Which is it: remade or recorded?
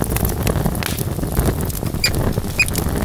recorded